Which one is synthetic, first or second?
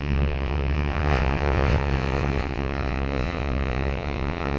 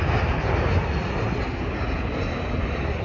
first